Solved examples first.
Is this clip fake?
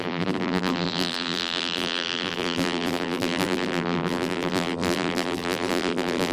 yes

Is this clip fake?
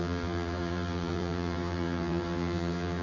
yes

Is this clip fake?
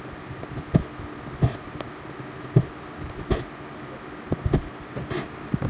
no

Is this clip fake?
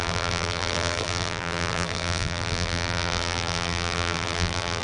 yes